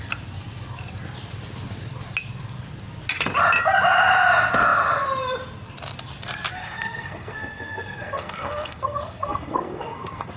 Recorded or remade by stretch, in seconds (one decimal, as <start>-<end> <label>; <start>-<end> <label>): 0.0-6.6 recorded; 6.6-10.4 remade